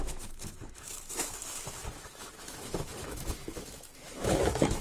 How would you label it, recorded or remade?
remade